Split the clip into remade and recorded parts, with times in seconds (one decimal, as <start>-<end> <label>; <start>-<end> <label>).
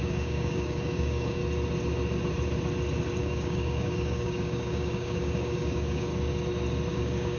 0.0-1.4 remade; 1.4-3.2 recorded; 3.2-6.1 remade; 6.1-6.9 recorded; 6.9-7.4 remade